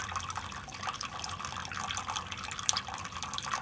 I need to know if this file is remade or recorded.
recorded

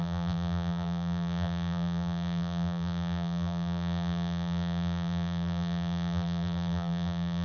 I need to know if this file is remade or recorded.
remade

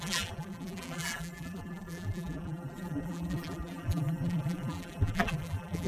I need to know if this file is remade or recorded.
remade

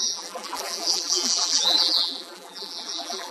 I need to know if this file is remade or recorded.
remade